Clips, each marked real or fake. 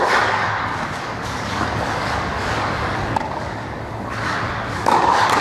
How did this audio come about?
fake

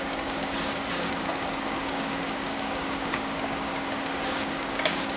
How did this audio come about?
fake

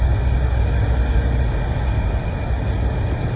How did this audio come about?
real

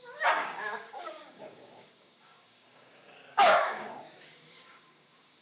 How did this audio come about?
fake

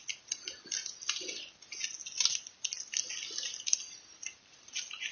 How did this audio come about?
real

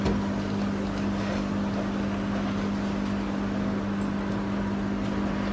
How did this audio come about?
real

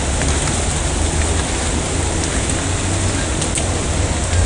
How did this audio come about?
real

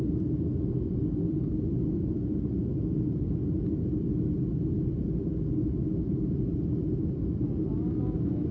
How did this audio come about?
real